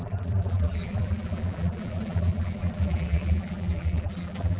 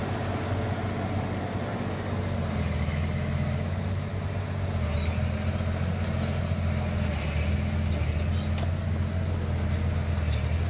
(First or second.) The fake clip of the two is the first